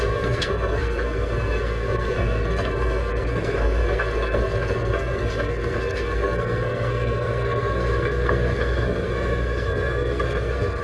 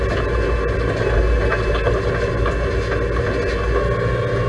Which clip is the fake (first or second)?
first